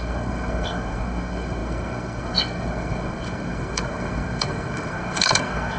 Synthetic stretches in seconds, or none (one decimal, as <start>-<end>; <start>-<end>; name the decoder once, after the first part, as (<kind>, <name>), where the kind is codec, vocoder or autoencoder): 0.0-5.8 (codec, SNAC)